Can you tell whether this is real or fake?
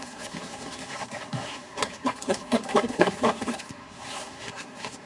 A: fake